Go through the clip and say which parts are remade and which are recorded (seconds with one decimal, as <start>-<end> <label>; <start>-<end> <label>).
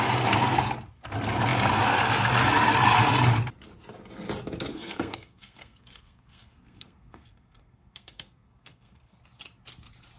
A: 0.0-4.7 recorded; 4.7-9.2 remade; 9.2-10.2 recorded